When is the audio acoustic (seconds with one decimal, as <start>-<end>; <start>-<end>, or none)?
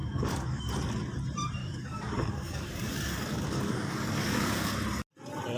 0.6-1.6; 4.7-5.6